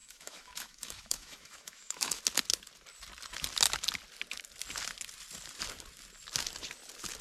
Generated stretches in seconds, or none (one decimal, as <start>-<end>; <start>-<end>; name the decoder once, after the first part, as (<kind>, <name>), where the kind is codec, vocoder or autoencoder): 0.0-2.2 (autoencoder, DAC-VAE)